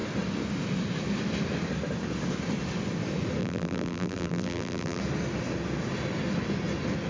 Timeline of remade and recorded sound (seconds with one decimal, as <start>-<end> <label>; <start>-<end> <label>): 0.0-3.4 recorded; 3.4-5.0 remade; 5.0-7.1 recorded